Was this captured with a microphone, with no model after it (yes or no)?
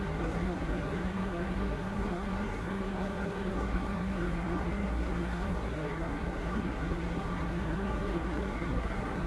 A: no